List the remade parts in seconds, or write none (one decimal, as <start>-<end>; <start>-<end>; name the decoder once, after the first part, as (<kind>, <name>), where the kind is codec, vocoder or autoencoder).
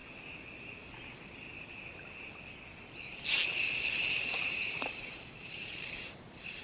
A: 4.0-6.6 (vocoder, BigVGAN v2)